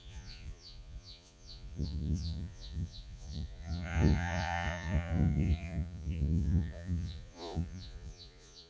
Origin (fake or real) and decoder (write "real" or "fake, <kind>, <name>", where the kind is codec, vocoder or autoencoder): fake, vocoder, Vocos